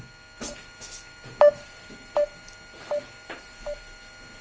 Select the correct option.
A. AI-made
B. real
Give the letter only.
B